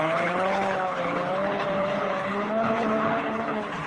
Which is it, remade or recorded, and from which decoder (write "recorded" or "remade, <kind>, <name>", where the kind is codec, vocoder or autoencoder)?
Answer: remade, codec, HILCodec